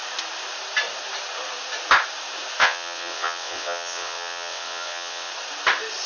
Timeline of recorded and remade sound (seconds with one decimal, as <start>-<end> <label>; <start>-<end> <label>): 0.0-2.6 recorded; 2.6-5.3 remade; 5.3-6.1 recorded